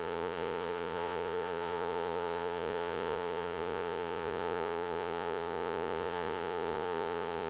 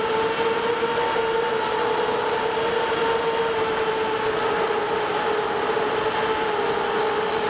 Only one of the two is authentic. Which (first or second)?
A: second